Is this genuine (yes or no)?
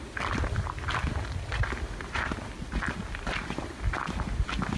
yes